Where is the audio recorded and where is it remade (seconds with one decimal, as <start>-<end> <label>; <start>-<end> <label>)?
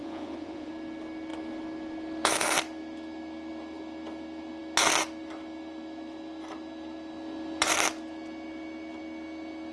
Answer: 0.0-0.7 remade; 0.7-9.7 recorded